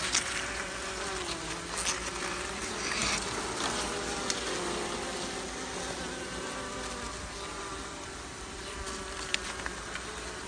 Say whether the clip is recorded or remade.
recorded